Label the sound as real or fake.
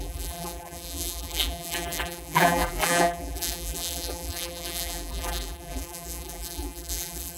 fake